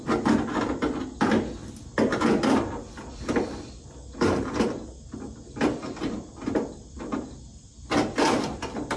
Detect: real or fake real